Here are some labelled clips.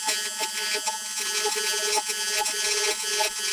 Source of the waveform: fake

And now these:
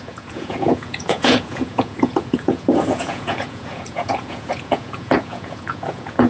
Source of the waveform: fake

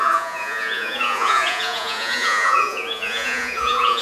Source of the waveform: fake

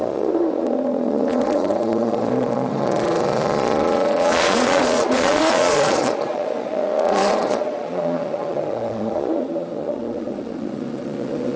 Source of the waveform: fake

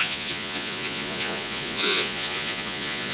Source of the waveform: fake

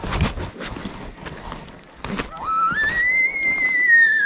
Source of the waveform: real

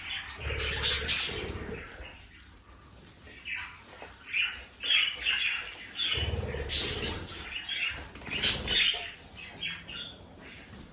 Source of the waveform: real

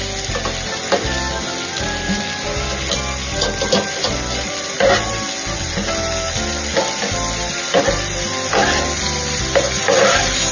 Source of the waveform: real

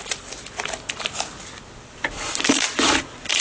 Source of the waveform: real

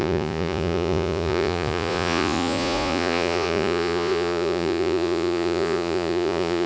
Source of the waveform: fake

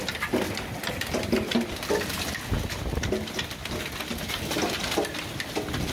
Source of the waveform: real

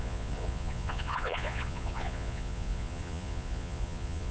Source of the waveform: fake